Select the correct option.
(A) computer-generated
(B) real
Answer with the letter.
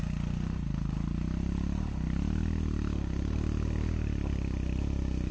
B